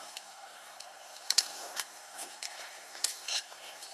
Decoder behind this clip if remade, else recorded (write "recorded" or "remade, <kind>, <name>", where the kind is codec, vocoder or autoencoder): remade, codec, SNAC